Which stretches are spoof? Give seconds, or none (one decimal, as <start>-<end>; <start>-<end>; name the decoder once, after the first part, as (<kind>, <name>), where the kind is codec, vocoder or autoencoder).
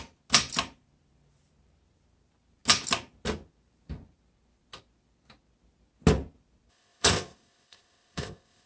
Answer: 6.7-8.7 (codec, ZipCodec)